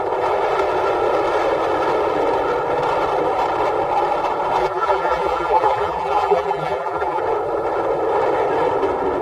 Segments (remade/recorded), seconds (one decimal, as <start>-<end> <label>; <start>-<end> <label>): 0.0-4.6 recorded; 4.6-7.2 remade; 7.2-9.2 recorded